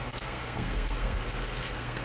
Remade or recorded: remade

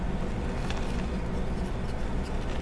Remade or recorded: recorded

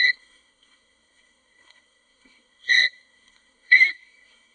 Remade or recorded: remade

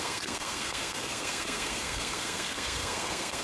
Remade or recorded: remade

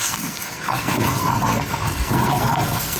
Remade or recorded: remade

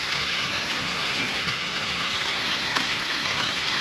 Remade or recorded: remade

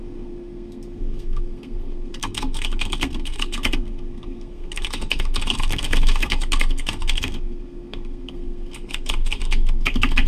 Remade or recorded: remade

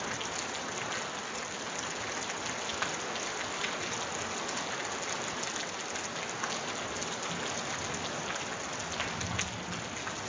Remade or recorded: recorded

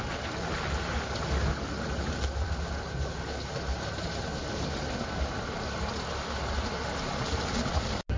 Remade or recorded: recorded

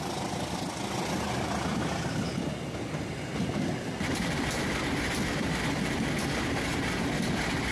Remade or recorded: recorded